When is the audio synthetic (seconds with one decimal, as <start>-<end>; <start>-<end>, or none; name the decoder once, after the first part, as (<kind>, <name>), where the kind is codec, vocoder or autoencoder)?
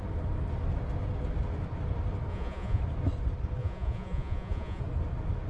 2.3-2.8 (vocoder, Vocos); 3.6-4.8